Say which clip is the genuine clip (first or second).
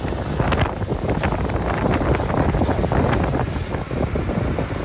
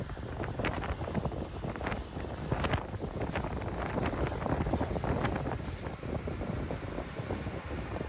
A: first